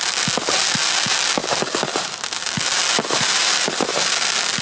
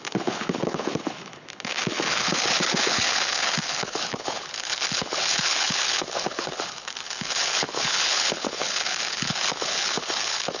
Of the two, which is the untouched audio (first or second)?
first